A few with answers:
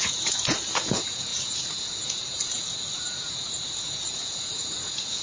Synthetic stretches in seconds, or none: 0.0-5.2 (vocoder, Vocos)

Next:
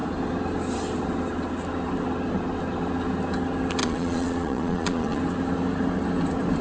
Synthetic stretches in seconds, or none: 3.8-5.2 (vocoder, Vocos)

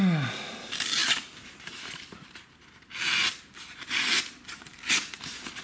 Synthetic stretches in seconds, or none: none

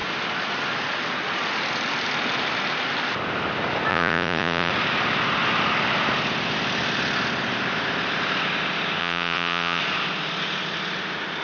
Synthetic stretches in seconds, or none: 3.9-4.7 (vocoder, Vocos); 9.0-9.8

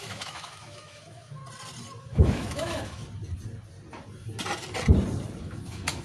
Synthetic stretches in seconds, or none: 0.0-1.4 (autoencoder, DAC-VAE); 2.0-3.0; 5.4-6.0

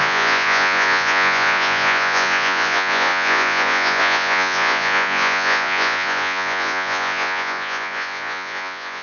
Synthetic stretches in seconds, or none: 0.0-9.0 (vocoder, Vocos)

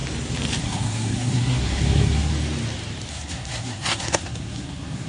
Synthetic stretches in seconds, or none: 0.6-2.3 (codec, SNAC); 3.1-5.1

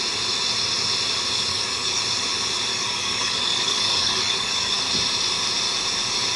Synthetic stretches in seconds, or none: 1.5-2.0 (codec, DAC); 2.7-4.8